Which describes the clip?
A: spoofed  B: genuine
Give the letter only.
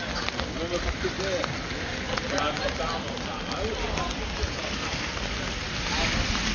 B